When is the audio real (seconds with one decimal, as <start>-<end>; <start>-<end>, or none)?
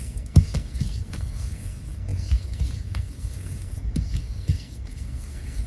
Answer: none